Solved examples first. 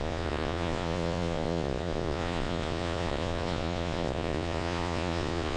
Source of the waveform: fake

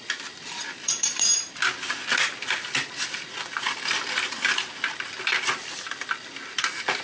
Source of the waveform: fake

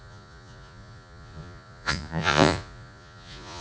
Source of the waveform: fake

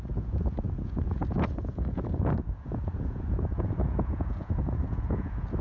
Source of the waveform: fake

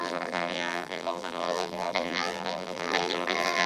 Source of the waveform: fake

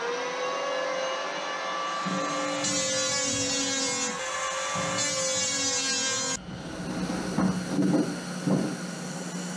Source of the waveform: real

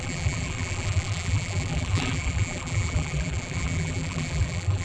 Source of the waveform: fake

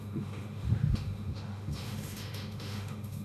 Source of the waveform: fake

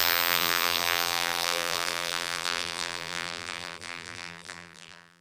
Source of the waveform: fake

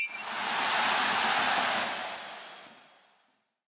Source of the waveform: real